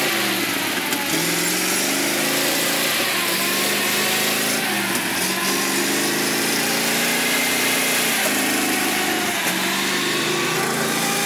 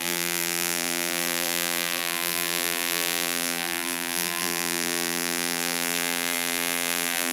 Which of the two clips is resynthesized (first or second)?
second